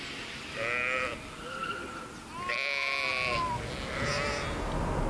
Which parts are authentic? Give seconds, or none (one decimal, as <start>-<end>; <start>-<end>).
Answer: 0.0-5.1